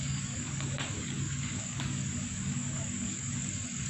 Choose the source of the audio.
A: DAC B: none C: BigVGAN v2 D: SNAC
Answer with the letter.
A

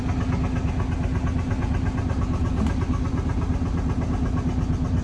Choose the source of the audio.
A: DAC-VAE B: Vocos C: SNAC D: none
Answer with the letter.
D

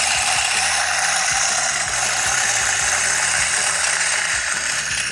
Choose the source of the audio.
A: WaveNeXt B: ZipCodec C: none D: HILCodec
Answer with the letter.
C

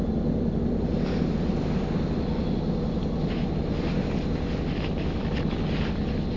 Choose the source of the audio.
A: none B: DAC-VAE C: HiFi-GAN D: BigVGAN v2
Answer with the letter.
A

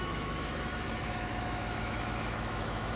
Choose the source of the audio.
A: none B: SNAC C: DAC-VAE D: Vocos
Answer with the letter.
C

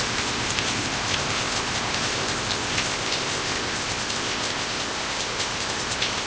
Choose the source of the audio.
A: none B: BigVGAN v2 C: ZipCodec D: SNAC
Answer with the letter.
C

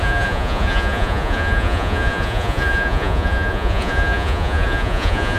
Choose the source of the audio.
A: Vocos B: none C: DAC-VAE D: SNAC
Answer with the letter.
A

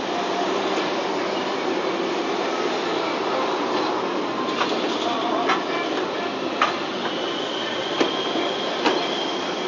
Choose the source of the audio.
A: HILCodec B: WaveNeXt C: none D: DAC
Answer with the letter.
C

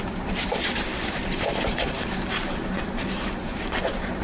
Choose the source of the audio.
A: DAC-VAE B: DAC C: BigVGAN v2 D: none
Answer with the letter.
C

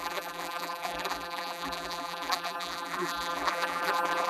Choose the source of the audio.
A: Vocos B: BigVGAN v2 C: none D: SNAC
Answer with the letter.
B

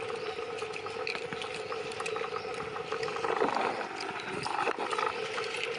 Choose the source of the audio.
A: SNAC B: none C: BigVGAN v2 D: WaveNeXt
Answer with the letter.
B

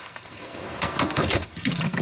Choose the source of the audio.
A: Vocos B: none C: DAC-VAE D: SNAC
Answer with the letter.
D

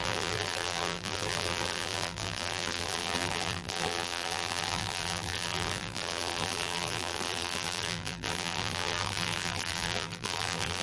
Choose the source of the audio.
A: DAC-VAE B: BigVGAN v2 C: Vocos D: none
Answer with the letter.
B